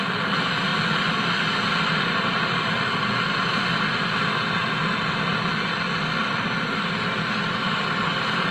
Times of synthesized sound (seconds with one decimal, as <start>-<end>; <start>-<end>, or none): none